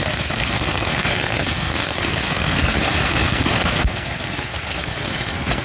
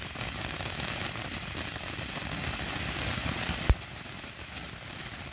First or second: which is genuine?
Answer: second